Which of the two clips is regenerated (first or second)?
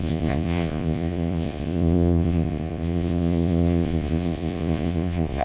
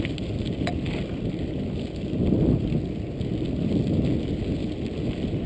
first